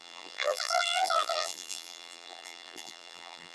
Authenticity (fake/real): fake